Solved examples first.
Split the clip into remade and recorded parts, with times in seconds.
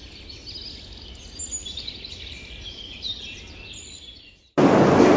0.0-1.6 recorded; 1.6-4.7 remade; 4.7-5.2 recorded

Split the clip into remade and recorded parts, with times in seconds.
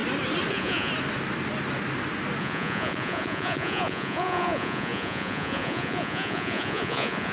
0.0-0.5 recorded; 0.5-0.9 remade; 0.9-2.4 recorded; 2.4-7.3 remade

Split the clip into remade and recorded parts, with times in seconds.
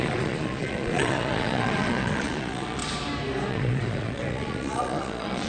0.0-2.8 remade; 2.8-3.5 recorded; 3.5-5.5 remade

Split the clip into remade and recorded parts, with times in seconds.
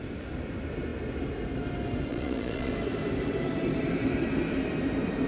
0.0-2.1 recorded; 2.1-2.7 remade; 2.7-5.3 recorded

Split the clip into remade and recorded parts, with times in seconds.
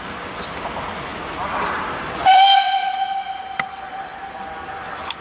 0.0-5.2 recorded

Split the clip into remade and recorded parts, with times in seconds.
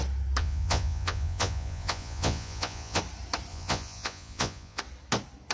0.0-0.4 recorded; 0.4-3.0 remade; 3.0-3.5 recorded; 3.5-4.8 remade; 4.8-5.5 recorded